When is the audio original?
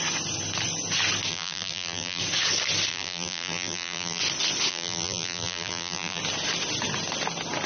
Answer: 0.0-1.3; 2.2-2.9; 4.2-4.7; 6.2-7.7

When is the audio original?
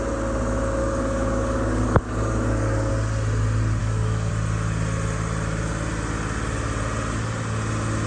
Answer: 0.0-0.8; 2.9-3.8; 4.3-8.1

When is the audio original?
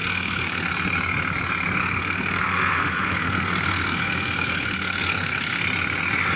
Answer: 0.7-1.8; 5.6-6.4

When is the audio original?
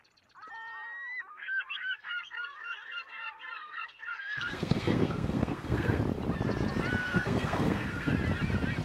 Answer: 0.0-1.3; 6.0-7.0; 8.1-8.8